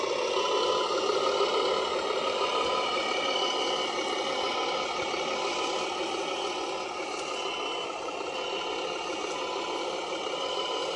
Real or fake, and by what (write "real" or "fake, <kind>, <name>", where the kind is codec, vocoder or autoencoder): real